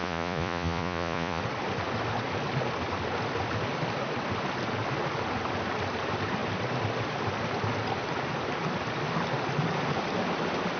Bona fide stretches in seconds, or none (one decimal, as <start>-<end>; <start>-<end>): 1.4-10.8